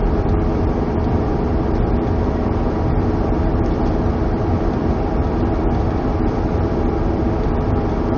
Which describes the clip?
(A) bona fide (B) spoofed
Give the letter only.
B